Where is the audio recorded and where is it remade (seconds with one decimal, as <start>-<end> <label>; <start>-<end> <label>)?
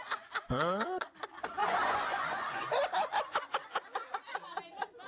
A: 0.0-0.5 recorded; 0.5-1.1 remade; 1.1-1.6 recorded; 1.6-2.8 remade; 2.8-5.1 recorded